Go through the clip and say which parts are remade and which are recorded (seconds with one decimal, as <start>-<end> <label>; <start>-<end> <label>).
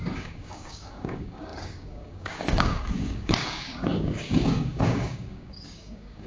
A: 0.0-6.3 remade